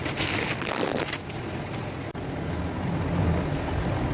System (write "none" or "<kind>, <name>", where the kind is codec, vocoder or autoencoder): none